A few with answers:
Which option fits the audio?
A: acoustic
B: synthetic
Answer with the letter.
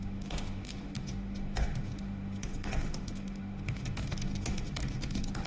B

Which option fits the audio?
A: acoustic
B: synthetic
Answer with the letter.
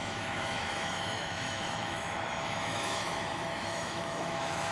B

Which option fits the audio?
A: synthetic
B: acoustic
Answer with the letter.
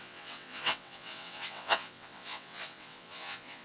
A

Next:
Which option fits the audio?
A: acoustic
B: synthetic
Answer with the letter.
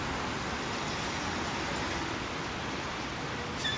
A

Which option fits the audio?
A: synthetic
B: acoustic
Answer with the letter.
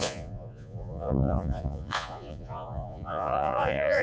A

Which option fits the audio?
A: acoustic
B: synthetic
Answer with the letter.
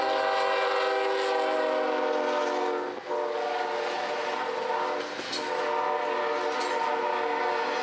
A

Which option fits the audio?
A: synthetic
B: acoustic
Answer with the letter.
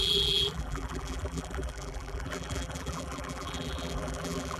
A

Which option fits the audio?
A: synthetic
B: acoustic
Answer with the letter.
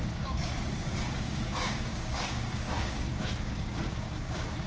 A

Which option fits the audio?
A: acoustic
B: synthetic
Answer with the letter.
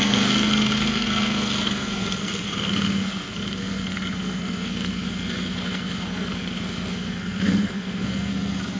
B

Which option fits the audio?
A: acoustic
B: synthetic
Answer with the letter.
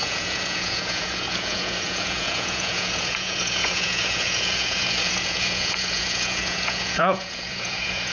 B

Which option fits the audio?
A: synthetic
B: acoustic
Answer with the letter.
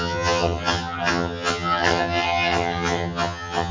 A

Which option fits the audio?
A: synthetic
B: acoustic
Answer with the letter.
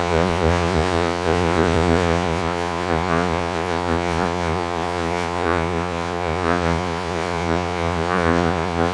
A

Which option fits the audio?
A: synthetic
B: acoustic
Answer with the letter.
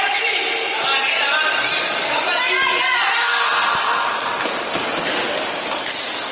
B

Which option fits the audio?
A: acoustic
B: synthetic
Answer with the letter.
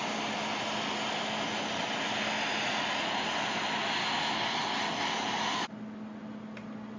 A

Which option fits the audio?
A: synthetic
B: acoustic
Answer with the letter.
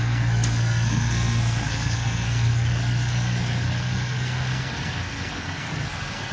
A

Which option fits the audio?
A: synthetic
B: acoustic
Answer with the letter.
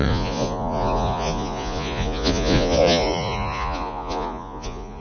A